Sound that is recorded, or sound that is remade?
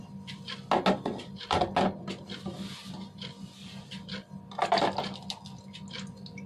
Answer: recorded